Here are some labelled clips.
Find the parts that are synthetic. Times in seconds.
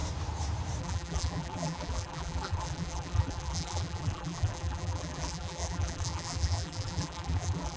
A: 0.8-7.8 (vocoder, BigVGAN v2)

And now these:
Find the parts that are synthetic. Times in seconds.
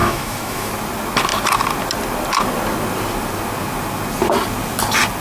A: 0.0-0.7 (autoencoder, DAC-VAE)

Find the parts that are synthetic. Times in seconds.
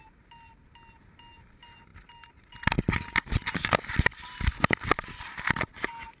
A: none